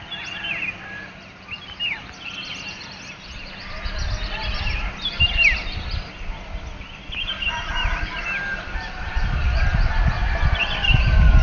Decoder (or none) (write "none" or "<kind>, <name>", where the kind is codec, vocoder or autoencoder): none